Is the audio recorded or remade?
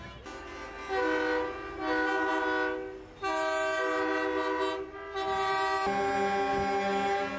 recorded